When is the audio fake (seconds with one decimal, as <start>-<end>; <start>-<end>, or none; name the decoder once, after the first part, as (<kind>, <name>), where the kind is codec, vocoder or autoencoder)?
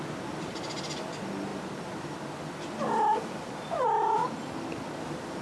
none